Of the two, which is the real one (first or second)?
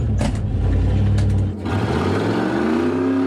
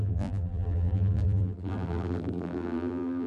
first